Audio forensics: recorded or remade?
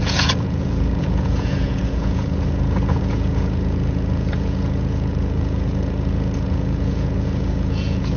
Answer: remade